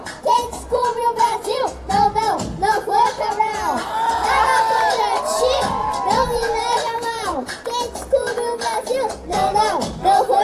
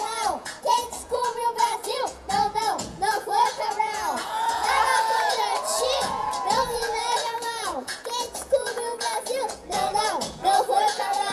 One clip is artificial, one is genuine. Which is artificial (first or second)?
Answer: second